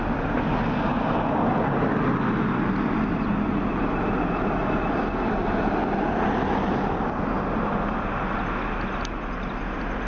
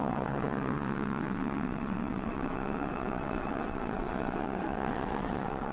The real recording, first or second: first